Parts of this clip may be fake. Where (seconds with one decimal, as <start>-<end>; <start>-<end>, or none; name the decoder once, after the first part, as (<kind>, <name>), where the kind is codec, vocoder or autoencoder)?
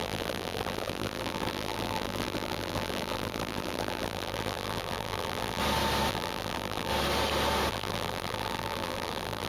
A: 0.0-5.6 (vocoder, BigVGAN v2); 6.1-6.9; 7.7-9.5